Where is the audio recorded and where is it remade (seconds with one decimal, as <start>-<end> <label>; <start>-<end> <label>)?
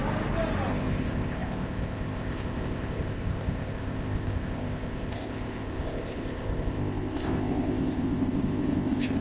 0.0-0.7 recorded; 0.7-9.2 remade